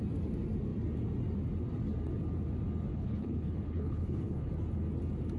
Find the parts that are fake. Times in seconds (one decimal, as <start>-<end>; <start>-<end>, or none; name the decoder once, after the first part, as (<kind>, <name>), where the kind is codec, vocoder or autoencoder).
2.9-4.5 (codec, HILCodec)